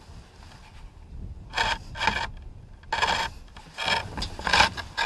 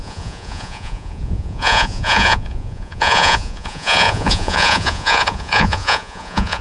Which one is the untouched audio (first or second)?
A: first